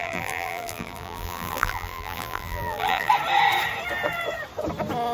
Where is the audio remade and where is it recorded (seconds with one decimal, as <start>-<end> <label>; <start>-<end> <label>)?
0.0-3.1 remade; 3.1-5.1 recorded